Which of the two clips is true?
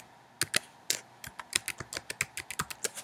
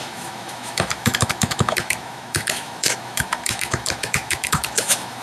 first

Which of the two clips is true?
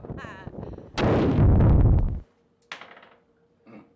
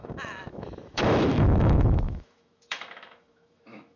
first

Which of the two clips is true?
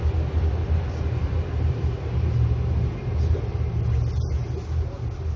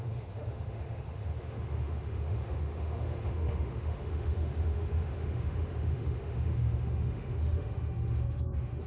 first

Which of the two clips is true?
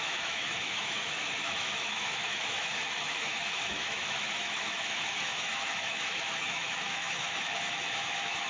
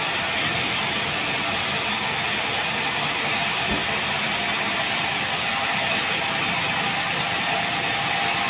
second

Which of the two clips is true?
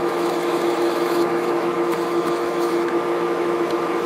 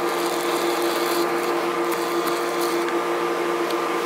second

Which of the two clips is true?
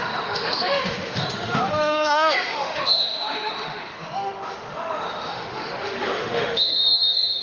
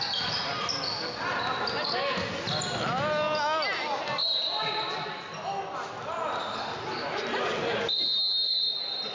second